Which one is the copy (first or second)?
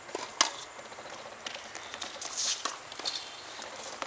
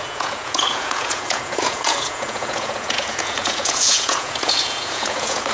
second